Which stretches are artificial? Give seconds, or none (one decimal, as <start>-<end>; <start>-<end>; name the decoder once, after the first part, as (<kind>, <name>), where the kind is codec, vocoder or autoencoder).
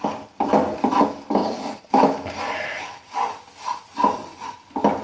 none